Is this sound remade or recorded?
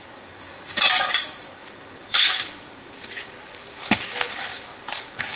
remade